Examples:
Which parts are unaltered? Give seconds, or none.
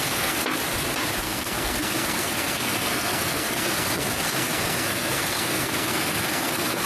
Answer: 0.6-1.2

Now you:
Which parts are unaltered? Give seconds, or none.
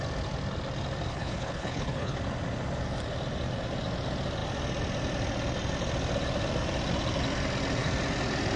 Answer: 0.0-1.1; 2.2-8.6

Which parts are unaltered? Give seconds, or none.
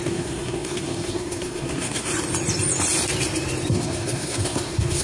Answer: 2.1-3.7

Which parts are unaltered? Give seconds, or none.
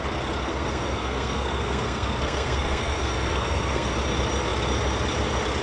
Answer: 0.0-0.5; 3.9-5.6